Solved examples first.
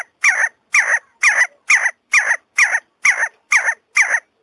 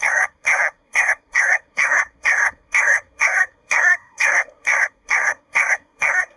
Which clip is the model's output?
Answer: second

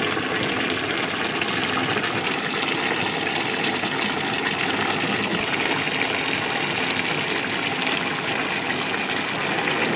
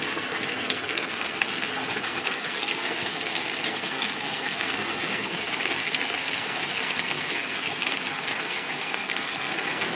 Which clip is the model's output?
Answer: second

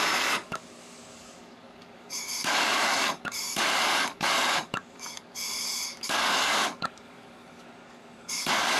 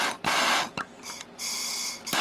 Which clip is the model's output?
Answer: first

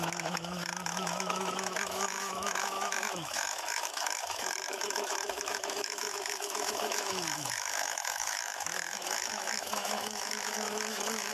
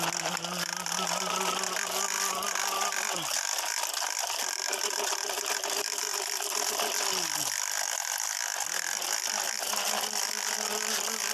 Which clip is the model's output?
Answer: first